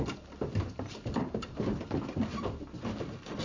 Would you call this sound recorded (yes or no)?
no